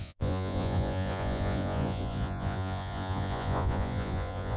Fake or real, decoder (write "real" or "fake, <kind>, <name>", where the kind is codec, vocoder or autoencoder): fake, vocoder, Vocos